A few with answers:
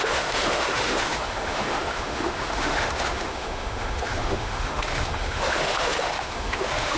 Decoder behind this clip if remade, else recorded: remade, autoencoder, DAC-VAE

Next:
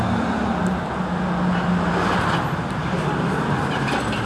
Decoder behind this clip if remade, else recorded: recorded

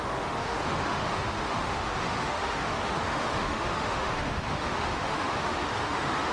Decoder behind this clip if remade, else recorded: remade, autoencoder, DAC-VAE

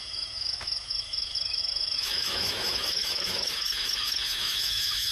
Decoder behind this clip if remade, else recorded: remade, autoencoder, DAC-VAE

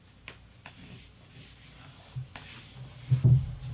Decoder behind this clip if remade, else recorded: recorded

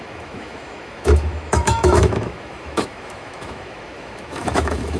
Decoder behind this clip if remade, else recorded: remade, autoencoder, DAC-VAE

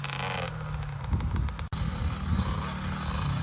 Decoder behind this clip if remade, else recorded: recorded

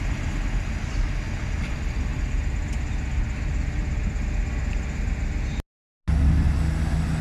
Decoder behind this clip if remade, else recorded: recorded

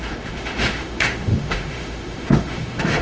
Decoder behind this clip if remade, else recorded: remade, autoencoder, DAC-VAE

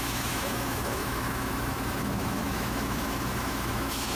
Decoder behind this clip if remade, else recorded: remade, autoencoder, DAC-VAE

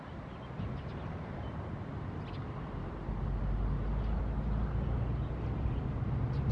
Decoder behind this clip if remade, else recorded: recorded